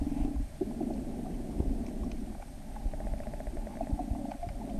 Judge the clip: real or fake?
fake